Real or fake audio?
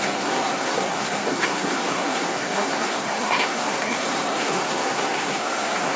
fake